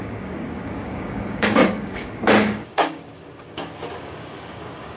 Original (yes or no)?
no